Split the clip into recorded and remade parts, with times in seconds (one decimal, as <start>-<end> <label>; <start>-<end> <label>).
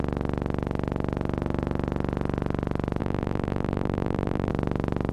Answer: 0.0-3.0 recorded; 3.0-4.5 remade; 4.5-5.1 recorded